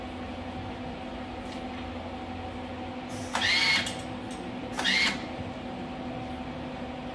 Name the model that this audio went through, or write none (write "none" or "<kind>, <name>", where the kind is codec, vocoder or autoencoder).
none